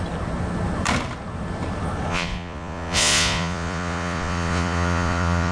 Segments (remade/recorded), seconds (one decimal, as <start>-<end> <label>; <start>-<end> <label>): 0.0-2.1 recorded; 2.1-5.5 remade